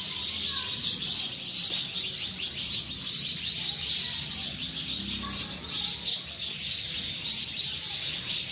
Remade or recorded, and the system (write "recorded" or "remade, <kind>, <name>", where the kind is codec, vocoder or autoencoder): recorded